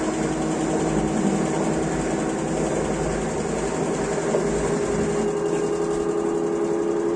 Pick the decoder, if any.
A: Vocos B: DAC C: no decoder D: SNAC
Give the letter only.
C